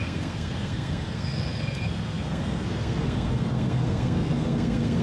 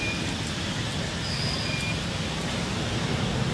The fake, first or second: first